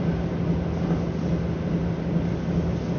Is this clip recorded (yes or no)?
yes